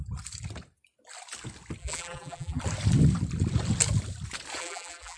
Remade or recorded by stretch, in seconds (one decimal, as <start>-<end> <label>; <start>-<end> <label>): 0.0-1.8 recorded; 1.8-2.6 remade; 2.6-4.6 recorded; 4.6-5.2 remade